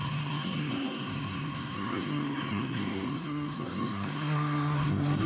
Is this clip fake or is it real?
fake